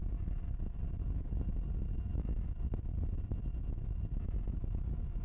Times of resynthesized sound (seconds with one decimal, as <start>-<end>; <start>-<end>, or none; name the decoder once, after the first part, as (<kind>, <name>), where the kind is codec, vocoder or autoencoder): none